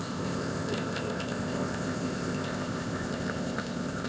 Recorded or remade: remade